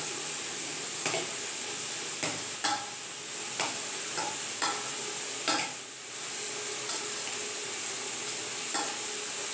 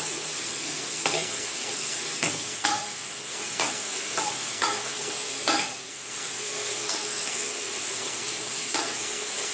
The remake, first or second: second